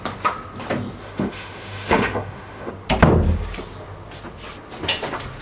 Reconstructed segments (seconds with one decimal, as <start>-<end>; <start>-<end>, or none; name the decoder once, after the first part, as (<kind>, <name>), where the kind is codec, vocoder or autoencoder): 1.0-2.7 (autoencoder, DAC-VAE)

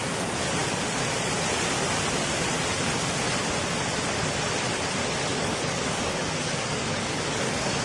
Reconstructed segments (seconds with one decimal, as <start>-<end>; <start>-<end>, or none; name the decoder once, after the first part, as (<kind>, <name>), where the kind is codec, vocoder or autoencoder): 5.3-7.8 (codec, DAC)

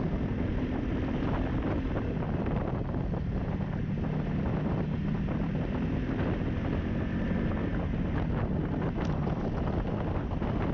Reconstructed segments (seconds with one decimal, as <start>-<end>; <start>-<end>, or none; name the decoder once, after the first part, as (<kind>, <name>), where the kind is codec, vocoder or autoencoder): none